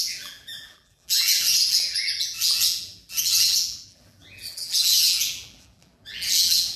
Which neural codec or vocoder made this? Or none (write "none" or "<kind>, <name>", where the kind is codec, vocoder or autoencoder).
vocoder, BigVGAN v2